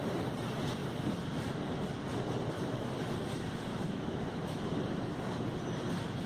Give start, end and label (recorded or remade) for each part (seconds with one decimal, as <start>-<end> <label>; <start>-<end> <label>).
0.0-3.7 recorded; 3.7-4.8 remade; 4.8-6.3 recorded